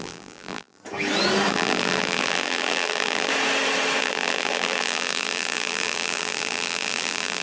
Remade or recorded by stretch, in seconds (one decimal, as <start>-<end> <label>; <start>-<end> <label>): 0.0-0.8 remade; 0.8-1.5 recorded; 1.5-3.3 remade; 3.3-4.0 recorded; 4.0-7.4 remade